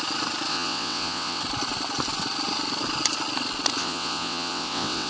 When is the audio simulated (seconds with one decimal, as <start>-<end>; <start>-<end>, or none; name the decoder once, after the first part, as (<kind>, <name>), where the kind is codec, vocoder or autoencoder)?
0.5-1.4 (vocoder, WaveNeXt); 3.8-5.1